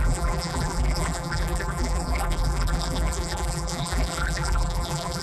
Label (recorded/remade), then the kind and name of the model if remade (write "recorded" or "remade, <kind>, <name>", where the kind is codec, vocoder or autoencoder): remade, vocoder, BigVGAN v2